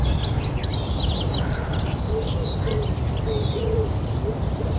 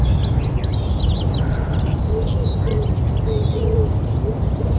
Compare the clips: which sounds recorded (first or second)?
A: second